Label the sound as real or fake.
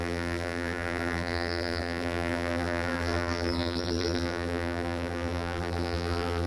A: fake